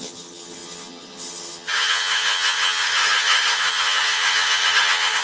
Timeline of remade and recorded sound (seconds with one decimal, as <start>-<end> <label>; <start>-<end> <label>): 0.0-5.2 remade